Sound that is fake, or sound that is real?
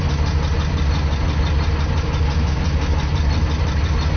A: real